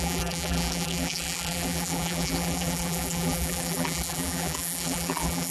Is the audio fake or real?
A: fake